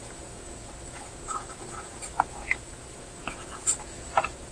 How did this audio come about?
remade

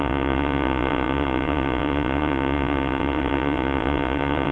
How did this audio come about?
remade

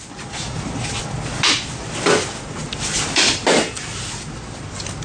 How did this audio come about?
recorded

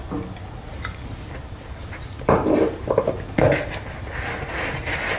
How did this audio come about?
recorded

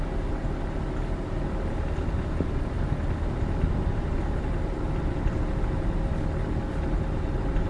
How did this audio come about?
recorded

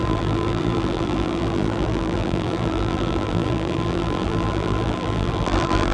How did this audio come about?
remade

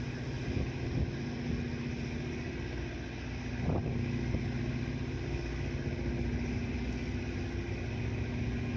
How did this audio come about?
recorded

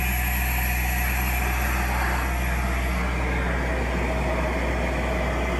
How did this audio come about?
recorded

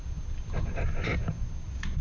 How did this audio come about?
recorded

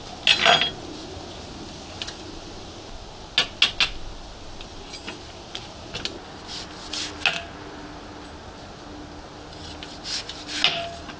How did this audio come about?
recorded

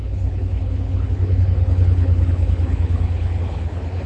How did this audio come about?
remade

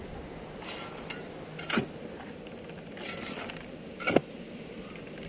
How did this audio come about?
recorded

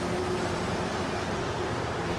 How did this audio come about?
recorded